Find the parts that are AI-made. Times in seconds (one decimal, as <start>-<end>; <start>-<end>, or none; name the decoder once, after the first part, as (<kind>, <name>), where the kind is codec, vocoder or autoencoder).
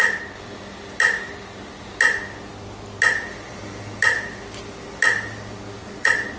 5.8-6.4 (vocoder, Vocos)